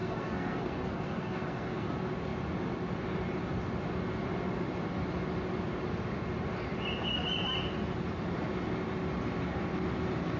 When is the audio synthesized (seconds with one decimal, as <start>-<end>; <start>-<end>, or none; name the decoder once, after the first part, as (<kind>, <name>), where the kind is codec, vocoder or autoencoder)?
0.0-1.9 (codec, SNAC)